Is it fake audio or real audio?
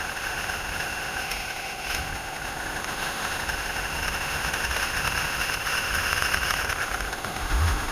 fake